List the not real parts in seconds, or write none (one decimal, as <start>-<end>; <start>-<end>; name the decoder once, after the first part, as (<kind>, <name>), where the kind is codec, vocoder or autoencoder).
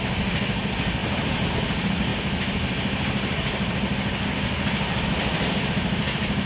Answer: none